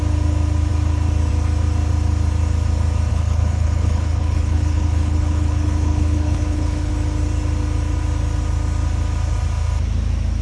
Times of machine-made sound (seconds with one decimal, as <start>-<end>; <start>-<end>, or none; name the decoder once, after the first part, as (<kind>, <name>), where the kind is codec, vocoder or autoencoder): 3.1-6.9 (codec, HILCodec)